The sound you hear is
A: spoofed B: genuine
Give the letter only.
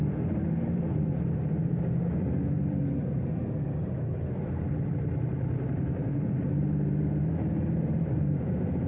A